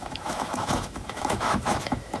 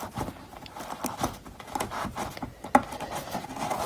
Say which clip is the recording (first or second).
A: second